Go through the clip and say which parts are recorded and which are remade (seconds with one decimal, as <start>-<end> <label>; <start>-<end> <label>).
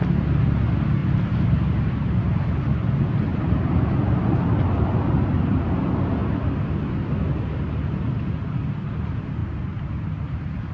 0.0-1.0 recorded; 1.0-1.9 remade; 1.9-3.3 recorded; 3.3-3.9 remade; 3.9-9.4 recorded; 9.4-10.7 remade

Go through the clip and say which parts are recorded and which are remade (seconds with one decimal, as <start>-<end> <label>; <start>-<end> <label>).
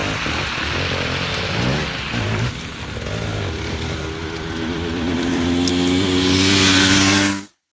0.0-3.3 recorded; 3.3-5.7 remade; 5.7-7.8 recorded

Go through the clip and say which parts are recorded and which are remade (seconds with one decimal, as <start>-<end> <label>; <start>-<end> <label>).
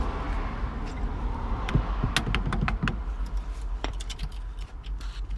0.0-0.9 recorded; 0.9-1.7 remade; 1.7-3.0 recorded; 3.0-5.4 remade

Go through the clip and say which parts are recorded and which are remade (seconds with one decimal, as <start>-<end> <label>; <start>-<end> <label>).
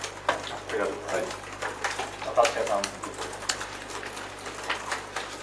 0.0-1.1 recorded; 1.1-4.3 remade; 4.3-5.4 recorded